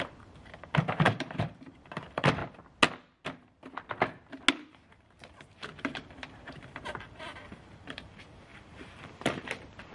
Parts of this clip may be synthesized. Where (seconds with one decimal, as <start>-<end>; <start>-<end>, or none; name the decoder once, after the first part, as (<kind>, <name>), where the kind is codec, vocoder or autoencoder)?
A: 0.0-2.4 (vocoder, BigVGAN v2); 4.7-9.9